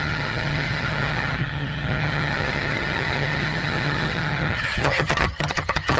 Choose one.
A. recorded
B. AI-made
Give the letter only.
B